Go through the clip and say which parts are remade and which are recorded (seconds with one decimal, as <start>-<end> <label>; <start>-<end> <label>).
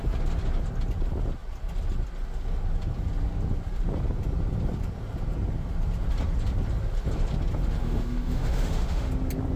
0.0-7.8 recorded; 7.8-9.1 remade; 9.1-9.6 recorded